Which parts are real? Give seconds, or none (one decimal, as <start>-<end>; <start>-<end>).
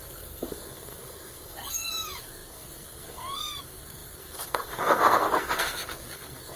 none